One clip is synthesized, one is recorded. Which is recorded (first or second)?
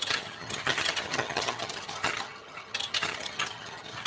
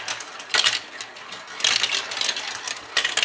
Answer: second